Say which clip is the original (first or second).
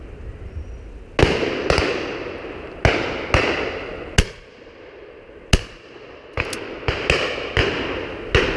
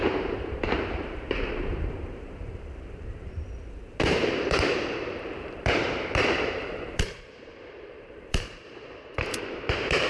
first